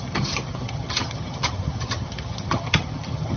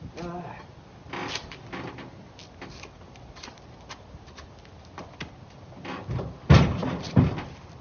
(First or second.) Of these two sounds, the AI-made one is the first